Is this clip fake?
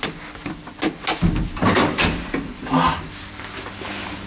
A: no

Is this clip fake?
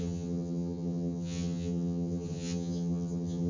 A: yes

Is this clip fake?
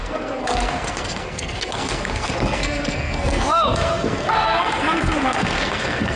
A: yes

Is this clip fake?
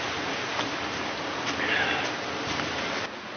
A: no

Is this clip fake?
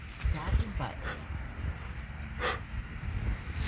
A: no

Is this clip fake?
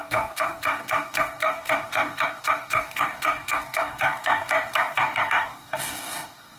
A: yes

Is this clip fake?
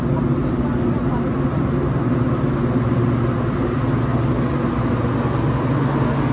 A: no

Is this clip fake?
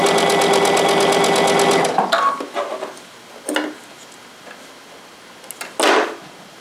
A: no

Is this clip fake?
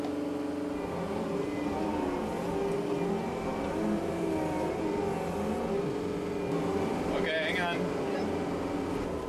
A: no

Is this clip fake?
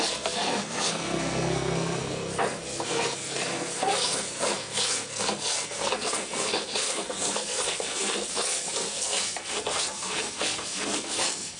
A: yes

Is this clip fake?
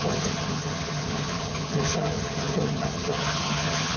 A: yes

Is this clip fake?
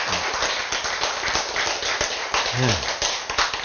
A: no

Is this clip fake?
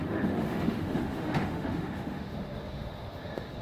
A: yes